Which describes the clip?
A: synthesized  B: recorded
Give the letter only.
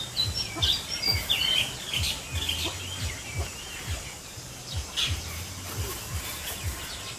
B